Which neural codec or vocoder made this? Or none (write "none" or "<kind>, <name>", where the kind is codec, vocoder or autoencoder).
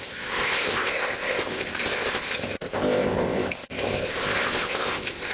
codec, ZipCodec